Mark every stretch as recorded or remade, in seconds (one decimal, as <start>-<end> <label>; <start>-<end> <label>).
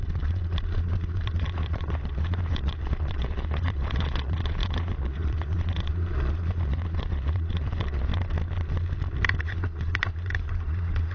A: 0.0-8.1 remade; 8.1-9.4 recorded; 9.4-11.1 remade